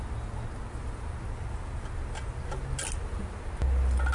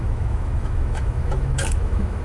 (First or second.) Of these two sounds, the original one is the first